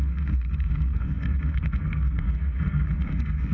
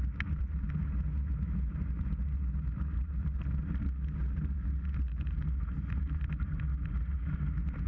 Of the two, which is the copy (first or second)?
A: first